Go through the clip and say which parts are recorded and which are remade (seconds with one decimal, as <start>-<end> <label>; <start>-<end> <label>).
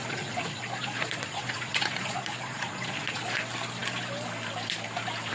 0.0-3.2 remade; 3.2-5.3 recorded